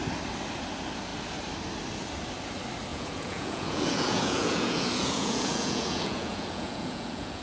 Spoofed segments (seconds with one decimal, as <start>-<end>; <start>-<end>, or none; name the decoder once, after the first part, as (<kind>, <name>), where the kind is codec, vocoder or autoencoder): 2.9-7.4 (vocoder, Vocos)